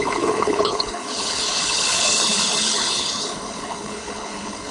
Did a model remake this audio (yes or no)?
yes